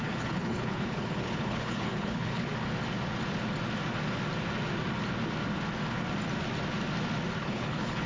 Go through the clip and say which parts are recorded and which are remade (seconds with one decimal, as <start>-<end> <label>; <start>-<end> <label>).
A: 0.0-2.5 remade; 2.5-7.4 recorded; 7.4-8.1 remade